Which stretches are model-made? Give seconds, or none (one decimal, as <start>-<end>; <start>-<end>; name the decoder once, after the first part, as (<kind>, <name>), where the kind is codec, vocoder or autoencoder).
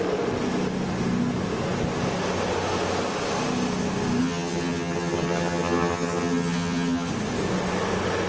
4.2-7.1 (vocoder, HiFi-GAN)